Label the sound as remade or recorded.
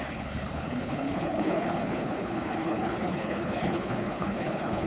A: remade